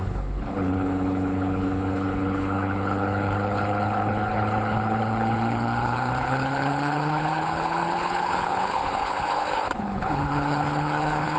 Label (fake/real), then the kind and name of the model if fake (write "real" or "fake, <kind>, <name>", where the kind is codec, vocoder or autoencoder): fake, codec, HILCodec